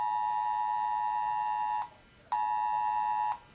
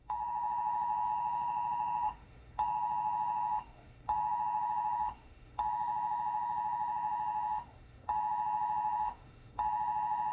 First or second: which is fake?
second